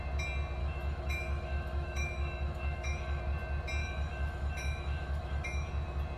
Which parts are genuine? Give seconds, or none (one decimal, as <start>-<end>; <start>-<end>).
0.0-0.6; 3.2-3.8; 5.7-6.2